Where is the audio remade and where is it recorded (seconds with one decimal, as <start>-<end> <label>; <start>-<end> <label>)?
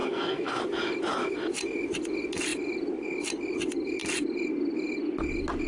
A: 0.0-0.6 remade; 0.6-5.7 recorded